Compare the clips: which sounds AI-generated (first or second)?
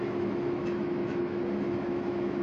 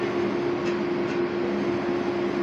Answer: first